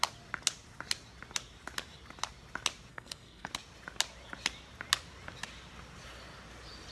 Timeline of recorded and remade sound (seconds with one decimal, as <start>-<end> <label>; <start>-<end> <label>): 0.0-2.9 recorded; 2.9-3.5 remade; 3.5-6.9 recorded